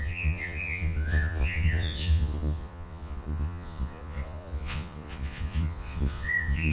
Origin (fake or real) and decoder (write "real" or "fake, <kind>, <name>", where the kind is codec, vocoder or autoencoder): fake, vocoder, Vocos